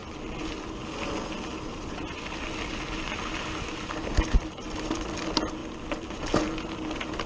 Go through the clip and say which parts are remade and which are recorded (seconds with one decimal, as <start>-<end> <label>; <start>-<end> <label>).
0.0-7.3 recorded